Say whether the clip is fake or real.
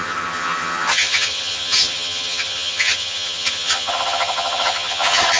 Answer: fake